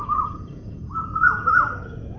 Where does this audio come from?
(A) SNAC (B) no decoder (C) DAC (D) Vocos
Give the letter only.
D